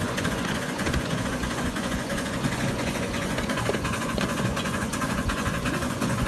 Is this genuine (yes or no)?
no